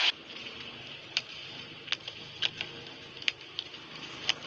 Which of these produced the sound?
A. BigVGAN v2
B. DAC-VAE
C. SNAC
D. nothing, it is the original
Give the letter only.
D